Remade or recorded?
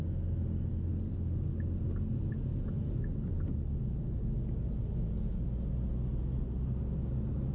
recorded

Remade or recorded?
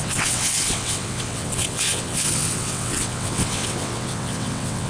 remade